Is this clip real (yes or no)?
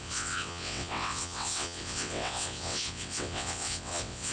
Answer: no